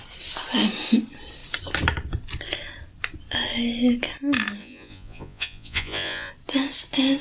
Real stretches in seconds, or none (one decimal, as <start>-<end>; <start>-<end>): 0.0-4.6; 6.3-7.2